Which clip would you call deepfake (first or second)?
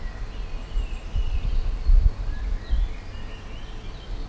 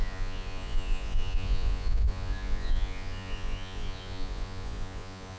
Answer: second